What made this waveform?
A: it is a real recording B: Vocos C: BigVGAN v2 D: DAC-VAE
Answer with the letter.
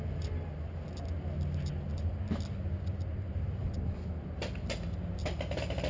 A